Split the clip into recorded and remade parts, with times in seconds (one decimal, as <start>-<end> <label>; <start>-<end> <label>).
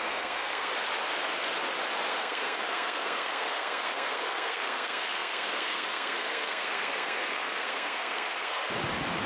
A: 0.0-0.7 remade; 0.7-2.1 recorded; 2.1-8.6 remade; 8.6-9.3 recorded